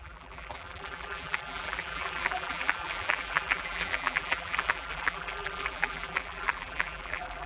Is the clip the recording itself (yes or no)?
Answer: no